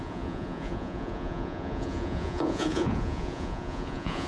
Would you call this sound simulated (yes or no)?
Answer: yes